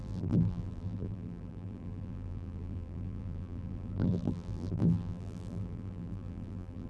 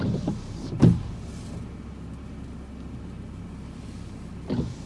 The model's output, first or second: first